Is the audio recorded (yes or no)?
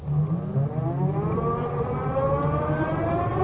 yes